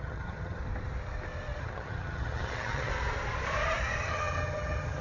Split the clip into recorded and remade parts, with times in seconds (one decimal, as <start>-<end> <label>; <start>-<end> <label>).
0.0-0.6 remade; 0.6-1.6 recorded; 1.6-2.9 remade; 2.9-4.0 recorded; 4.0-5.0 remade